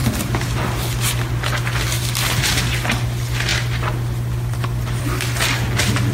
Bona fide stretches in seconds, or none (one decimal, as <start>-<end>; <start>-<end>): 0.0-6.1